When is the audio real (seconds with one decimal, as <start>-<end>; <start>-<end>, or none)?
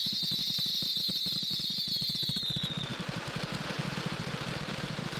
0.0-2.9